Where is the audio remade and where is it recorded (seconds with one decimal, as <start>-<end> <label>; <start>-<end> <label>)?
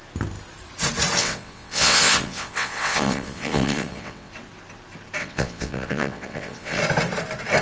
0.0-1.2 recorded; 1.2-4.3 remade; 4.3-5.2 recorded; 5.2-6.8 remade; 6.8-7.6 recorded